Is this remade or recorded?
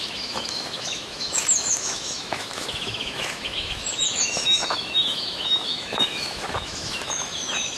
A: remade